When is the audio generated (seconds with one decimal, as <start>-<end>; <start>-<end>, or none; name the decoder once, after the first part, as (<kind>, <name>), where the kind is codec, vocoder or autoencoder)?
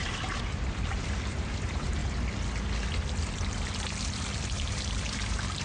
0.0-2.0 (vocoder, BigVGAN v2); 4.4-5.6